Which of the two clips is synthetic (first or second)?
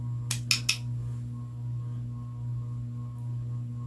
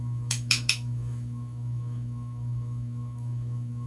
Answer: second